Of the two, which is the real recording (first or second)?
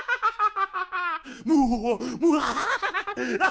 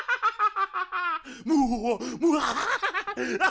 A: second